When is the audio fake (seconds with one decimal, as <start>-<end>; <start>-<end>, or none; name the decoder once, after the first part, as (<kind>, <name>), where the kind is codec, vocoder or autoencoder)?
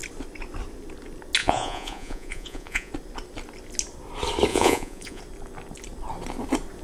1.4-2.9 (vocoder, Vocos); 4.5-5.2